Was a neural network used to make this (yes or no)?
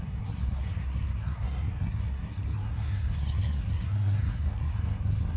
yes